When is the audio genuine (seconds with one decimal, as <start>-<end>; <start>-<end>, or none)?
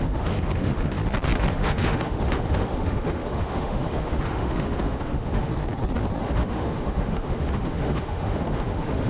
1.0-1.5; 5.5-6.2